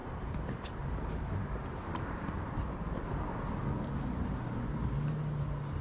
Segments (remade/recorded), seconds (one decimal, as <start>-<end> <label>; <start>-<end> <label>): 0.0-3.1 remade; 3.1-5.8 recorded